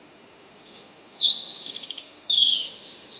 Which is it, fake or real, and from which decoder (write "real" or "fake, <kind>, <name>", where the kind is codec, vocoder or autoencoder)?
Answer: fake, autoencoder, DAC-VAE